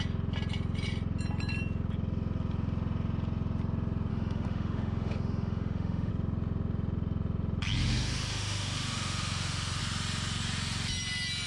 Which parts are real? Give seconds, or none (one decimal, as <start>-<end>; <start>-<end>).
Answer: 0.0-4.1; 6.1-7.8; 9.8-11.5